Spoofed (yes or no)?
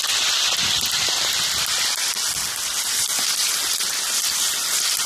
no